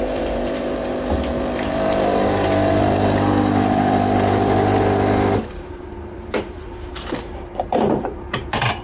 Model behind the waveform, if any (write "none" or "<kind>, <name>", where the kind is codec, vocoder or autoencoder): vocoder, BigVGAN v2